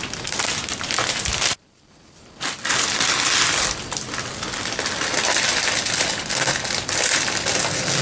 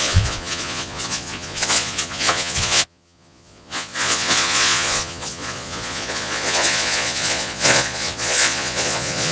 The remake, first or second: second